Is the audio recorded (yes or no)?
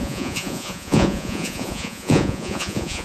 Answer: no